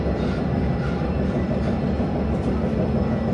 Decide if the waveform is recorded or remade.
recorded